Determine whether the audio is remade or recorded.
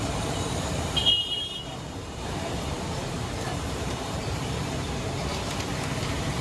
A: remade